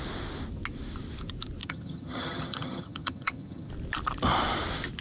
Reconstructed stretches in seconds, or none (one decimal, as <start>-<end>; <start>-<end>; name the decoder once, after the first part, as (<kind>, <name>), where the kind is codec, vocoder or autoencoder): 1.6-3.7 (vocoder, HiFi-GAN)